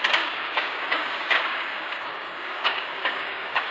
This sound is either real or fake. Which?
fake